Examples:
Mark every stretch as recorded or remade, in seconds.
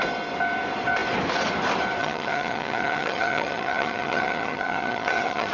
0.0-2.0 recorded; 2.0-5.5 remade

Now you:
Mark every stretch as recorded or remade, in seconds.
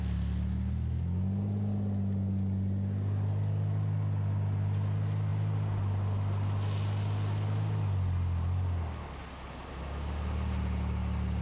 0.0-11.4 recorded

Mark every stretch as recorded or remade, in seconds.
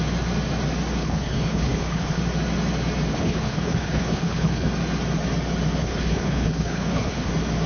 0.0-1.0 recorded; 1.0-2.2 remade; 2.2-3.1 recorded; 3.1-4.7 remade; 4.7-5.8 recorded; 5.8-7.3 remade; 7.3-7.7 recorded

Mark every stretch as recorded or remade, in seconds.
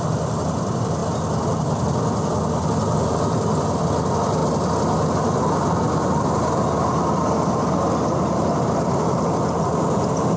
0.0-10.4 recorded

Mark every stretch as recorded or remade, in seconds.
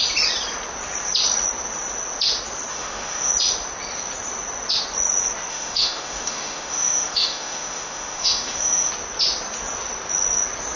0.0-2.7 recorded; 2.7-3.3 remade; 3.3-5.5 recorded; 5.5-8.9 remade; 8.9-10.8 recorded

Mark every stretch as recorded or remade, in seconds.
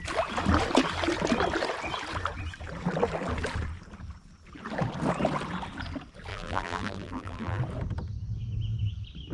0.0-6.3 recorded; 6.3-7.6 remade; 7.6-9.3 recorded